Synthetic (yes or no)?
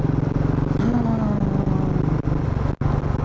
no